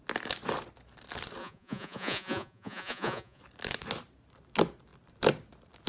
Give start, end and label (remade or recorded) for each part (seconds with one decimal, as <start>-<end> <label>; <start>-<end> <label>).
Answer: 0.0-1.4 recorded; 1.4-3.4 remade; 3.4-5.9 recorded